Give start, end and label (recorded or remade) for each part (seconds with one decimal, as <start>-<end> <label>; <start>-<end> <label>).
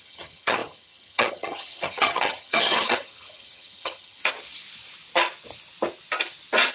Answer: 0.0-4.2 remade; 4.2-6.7 recorded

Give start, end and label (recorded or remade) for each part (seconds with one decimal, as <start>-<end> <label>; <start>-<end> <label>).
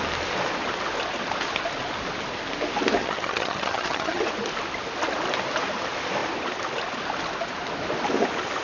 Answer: 0.0-3.0 recorded; 3.0-4.2 remade; 4.2-8.6 recorded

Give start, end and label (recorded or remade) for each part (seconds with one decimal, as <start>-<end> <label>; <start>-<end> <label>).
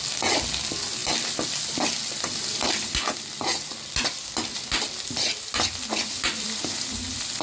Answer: 0.0-7.4 recorded